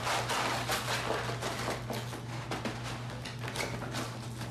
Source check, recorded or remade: recorded